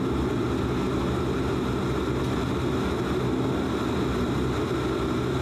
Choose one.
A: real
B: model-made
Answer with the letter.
A